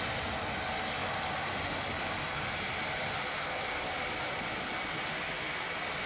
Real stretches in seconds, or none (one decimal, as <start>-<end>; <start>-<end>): 0.0-6.1